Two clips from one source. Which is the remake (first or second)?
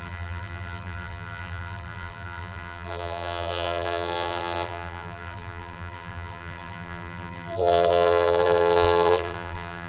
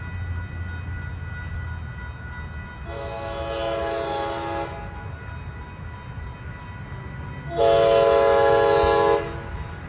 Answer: first